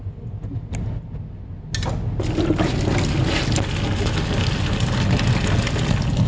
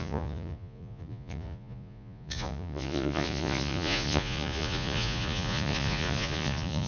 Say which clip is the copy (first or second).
second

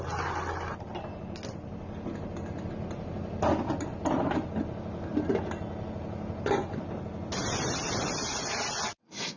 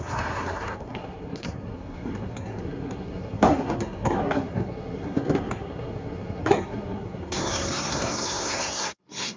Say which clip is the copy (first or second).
second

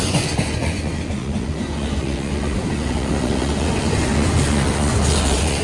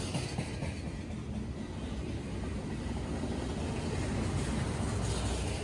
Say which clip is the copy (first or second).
first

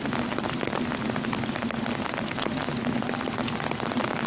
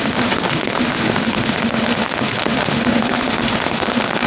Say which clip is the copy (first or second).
second